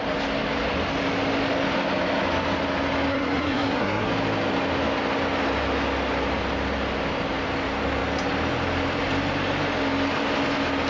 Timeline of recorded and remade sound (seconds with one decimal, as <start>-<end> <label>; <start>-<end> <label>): 0.0-3.1 recorded; 3.1-4.1 remade; 4.1-10.9 recorded